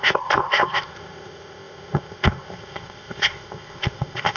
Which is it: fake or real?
fake